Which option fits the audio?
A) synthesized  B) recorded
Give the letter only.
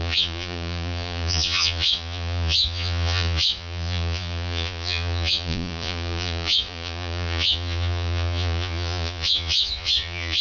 A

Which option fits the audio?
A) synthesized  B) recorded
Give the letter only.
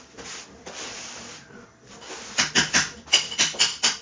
A